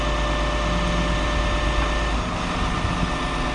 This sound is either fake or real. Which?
real